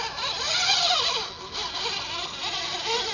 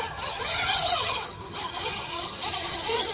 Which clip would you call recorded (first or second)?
first